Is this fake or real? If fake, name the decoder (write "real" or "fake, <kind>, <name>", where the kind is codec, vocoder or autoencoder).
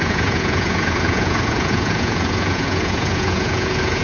fake, vocoder, Vocos